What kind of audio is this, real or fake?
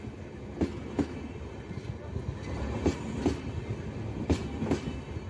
real